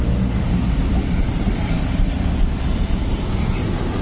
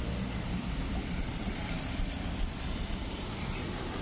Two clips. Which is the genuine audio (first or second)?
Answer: first